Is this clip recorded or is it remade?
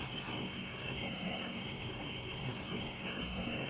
remade